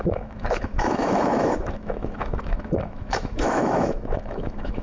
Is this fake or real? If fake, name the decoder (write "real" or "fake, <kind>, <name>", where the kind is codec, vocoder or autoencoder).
fake, autoencoder, DAC-VAE